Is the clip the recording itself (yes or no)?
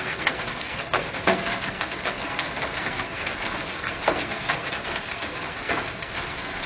no